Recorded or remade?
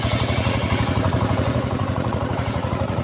remade